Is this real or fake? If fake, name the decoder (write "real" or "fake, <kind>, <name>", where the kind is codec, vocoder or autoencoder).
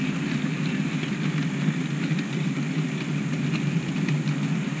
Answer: real